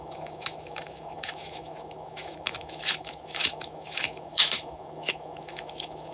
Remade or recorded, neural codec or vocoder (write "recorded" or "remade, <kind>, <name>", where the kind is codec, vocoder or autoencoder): remade, autoencoder, DAC-VAE